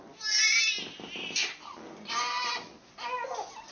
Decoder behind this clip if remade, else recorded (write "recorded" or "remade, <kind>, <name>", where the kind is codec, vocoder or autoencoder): recorded